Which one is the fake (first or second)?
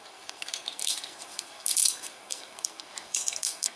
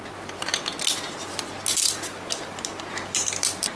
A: first